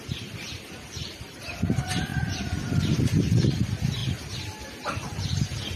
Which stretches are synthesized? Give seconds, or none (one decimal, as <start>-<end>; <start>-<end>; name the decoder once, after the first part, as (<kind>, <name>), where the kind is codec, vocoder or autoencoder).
4.0-5.8 (vocoder, BigVGAN v2)